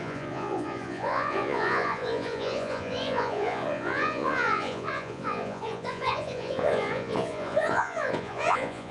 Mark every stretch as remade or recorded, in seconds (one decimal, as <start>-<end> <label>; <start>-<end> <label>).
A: 0.0-8.9 remade